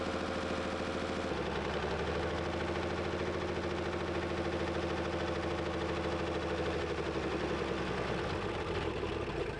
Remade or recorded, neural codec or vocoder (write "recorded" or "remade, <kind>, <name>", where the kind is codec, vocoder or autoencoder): recorded